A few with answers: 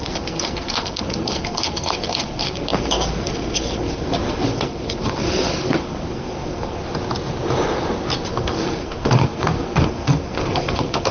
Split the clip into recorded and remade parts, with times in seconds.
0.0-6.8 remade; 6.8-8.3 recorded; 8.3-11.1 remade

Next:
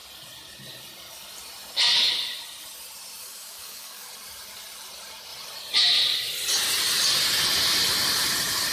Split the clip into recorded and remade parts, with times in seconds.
0.0-3.2 recorded; 3.2-4.1 remade; 4.1-8.7 recorded

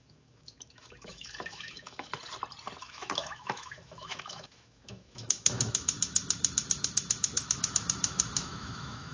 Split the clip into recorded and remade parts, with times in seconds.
0.0-2.1 remade; 2.1-2.8 recorded; 2.8-9.1 remade

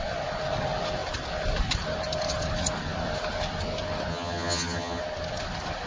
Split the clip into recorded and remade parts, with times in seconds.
0.0-4.1 recorded; 4.1-5.0 remade; 5.0-5.9 recorded

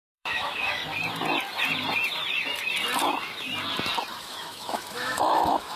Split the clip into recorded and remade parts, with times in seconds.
0.0-0.8 remade; 0.8-4.2 recorded; 4.2-5.8 remade

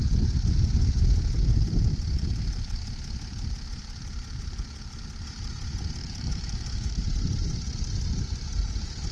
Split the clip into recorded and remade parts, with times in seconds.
0.0-6.0 recorded; 6.0-7.0 remade; 7.0-9.1 recorded